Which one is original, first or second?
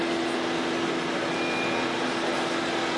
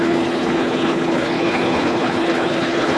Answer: first